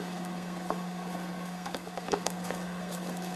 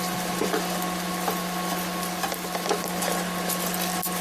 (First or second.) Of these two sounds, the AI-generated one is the first